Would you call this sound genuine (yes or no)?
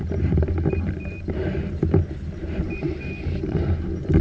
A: no